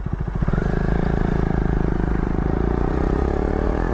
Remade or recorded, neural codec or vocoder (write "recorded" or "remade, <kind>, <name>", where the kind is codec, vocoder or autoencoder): remade, vocoder, Vocos